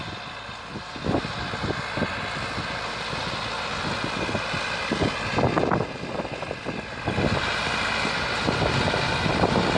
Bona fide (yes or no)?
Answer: yes